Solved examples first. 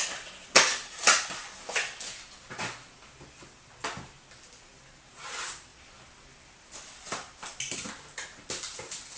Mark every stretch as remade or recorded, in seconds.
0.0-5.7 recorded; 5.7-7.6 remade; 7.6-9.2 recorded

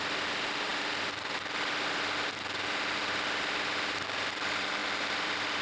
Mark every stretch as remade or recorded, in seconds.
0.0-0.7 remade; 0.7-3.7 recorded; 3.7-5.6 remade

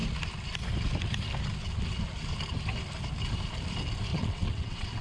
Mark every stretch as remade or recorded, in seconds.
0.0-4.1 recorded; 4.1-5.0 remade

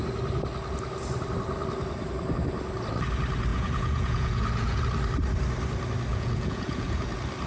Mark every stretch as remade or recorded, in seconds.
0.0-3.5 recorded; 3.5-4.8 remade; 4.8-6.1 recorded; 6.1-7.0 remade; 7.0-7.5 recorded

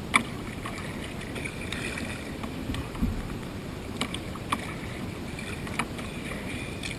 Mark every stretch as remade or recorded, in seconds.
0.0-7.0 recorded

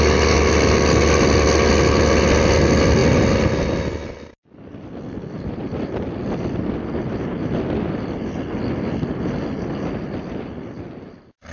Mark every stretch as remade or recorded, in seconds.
0.0-11.5 recorded